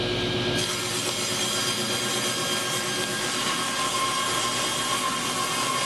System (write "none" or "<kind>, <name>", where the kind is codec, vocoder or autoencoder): none